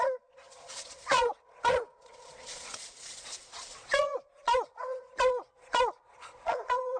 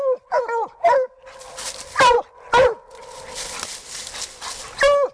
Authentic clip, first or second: second